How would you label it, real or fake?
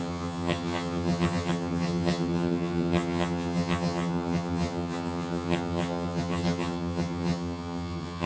fake